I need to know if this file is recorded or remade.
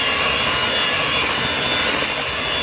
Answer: recorded